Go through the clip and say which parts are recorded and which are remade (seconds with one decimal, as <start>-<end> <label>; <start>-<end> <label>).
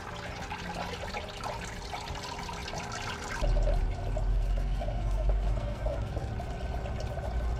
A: 0.0-4.3 recorded; 4.3-6.3 remade; 6.3-7.6 recorded